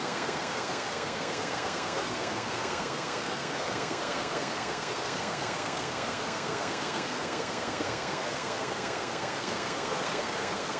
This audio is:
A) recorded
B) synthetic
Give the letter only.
B